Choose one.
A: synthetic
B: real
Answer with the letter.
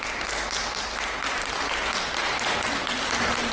B